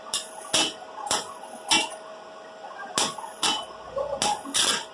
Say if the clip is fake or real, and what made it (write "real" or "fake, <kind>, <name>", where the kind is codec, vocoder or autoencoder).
real